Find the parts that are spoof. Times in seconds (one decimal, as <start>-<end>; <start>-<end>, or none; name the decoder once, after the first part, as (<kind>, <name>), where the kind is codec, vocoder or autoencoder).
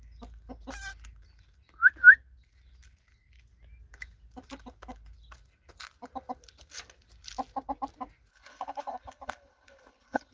8.3-10.3 (codec, HILCodec)